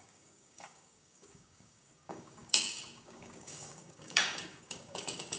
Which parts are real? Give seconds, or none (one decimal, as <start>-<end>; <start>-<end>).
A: none